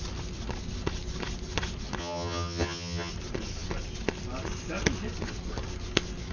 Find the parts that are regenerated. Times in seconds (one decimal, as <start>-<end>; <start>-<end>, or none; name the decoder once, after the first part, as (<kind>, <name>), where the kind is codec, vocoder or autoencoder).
2.0-3.1 (vocoder, HiFi-GAN)